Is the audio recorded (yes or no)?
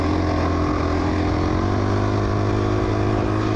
yes